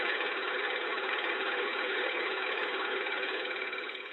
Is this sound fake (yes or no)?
yes